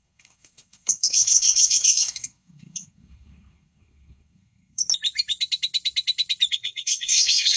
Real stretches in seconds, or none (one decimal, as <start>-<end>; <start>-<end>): 4.8-6.5